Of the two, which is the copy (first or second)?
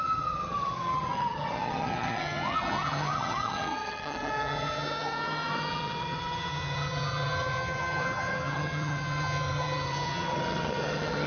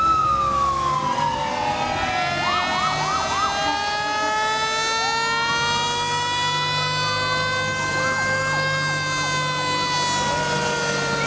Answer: first